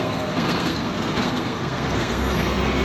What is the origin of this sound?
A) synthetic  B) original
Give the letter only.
A